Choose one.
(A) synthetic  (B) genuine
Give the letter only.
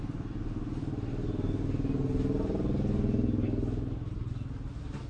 B